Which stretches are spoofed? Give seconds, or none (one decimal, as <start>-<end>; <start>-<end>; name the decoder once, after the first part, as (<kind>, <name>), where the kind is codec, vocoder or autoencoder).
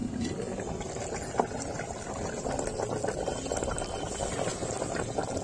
none